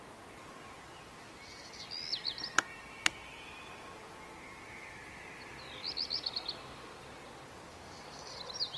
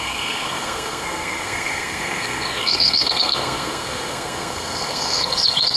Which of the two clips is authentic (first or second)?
first